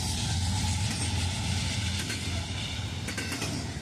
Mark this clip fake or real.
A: real